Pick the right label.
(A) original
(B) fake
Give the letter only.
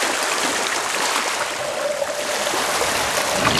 A